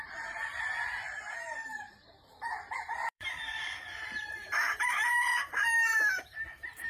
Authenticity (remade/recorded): remade